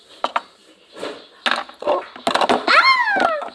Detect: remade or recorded recorded